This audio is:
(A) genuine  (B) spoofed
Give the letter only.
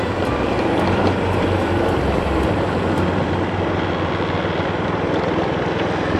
B